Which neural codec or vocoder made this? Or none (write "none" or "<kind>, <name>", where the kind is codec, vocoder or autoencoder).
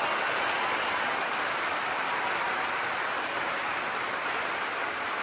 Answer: none